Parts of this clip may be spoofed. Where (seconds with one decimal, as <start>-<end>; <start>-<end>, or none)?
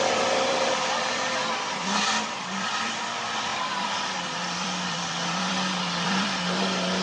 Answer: 0.0-7.0